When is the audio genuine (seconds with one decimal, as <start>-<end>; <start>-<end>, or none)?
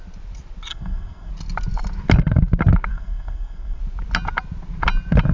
0.0-0.7; 1.3-2.9; 3.8-5.3